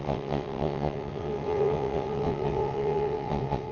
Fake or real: fake